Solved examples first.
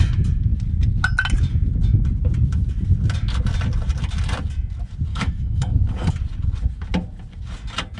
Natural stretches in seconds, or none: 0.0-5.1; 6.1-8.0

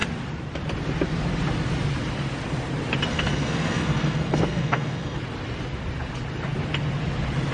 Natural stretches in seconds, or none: 0.0-3.1; 5.2-7.5

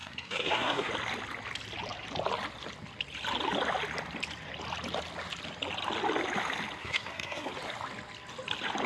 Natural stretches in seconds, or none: 0.9-6.8; 7.5-8.9

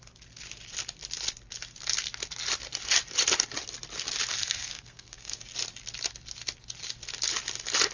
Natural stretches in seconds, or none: 0.0-4.3; 5.4-7.9